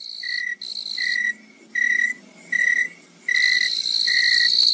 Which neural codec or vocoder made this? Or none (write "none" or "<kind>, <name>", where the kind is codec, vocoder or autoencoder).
none